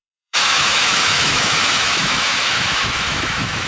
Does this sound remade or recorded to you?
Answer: remade